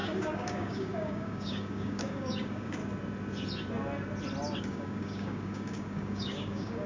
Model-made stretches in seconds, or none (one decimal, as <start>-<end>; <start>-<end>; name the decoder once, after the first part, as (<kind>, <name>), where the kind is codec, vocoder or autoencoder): 0.0-2.8 (codec, DAC); 4.6-6.9